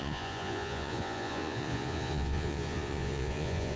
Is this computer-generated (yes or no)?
yes